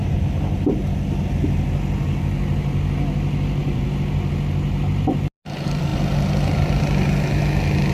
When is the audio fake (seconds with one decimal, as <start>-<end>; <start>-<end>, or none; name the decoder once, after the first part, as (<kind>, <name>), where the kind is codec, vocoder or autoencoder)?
3.6-4.3 (vocoder, BigVGAN v2); 5.9-6.7